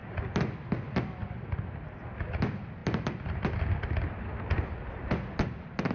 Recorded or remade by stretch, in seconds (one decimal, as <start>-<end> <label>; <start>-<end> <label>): 0.0-5.9 recorded